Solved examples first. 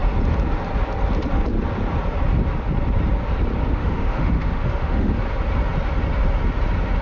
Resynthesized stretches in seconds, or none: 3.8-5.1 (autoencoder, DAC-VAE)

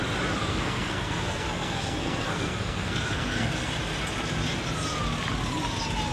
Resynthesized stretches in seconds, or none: 0.5-3.7 (codec, SNAC)

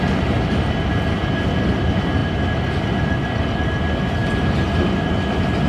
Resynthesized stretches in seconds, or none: none

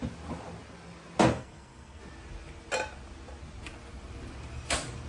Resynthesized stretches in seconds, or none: 1.3-2.0 (codec, SNAC)

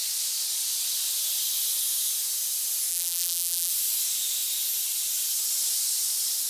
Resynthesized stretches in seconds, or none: 2.9-3.7 (vocoder, BigVGAN v2)

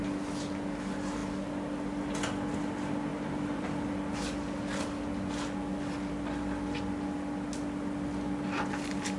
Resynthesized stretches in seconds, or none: 3.1-3.7 (vocoder, BigVGAN v2)